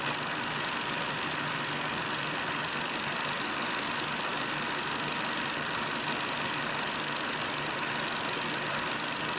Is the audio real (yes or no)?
yes